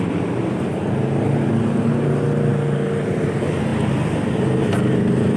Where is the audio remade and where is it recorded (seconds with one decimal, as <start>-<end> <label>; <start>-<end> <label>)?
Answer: 0.0-5.4 recorded